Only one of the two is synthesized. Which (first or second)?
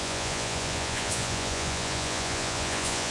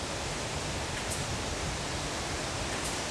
first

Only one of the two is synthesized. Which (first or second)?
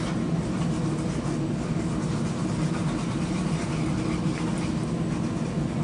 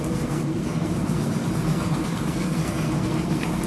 second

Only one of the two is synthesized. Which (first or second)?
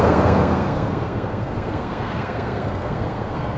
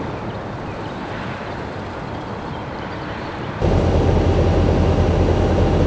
first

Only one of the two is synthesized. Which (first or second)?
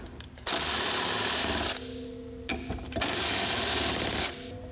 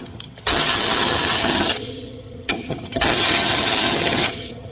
second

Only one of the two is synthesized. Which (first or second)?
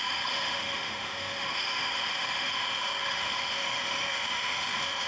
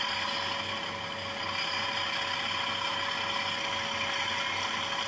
first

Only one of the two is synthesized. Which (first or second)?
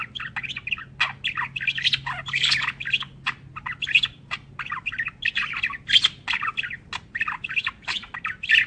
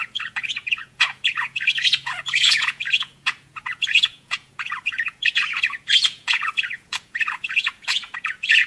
second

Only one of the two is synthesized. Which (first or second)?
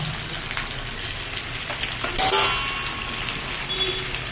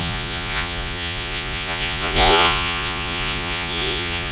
second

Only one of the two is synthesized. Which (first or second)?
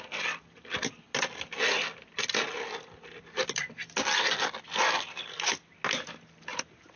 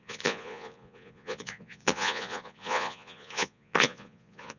second